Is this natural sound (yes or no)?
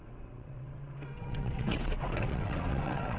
no